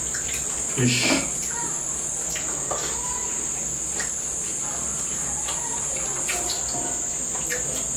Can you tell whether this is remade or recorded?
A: recorded